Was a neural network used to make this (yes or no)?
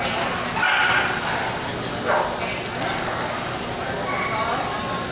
no